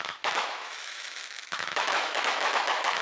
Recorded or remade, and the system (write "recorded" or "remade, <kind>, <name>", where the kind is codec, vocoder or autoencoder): remade, autoencoder, DAC-VAE